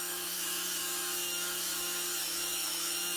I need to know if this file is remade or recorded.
remade